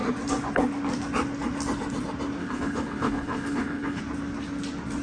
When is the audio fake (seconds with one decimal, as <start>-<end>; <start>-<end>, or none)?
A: 2.4-4.0